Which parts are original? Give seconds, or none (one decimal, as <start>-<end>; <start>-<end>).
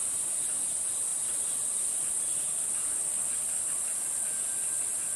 0.0-5.2